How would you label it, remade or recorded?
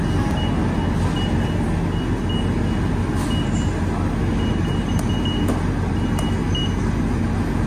recorded